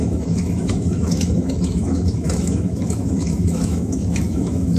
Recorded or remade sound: remade